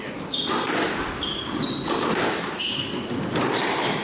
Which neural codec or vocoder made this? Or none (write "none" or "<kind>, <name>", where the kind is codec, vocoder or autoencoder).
none